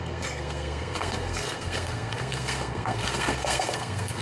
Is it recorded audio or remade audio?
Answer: remade